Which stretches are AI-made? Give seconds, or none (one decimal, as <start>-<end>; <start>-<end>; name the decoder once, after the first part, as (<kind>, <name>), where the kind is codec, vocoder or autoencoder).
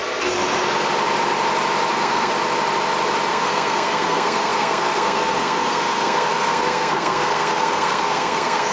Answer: 1.9-2.3 (codec, SNAC); 3.3-8.7